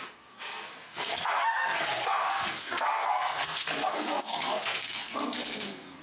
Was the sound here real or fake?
fake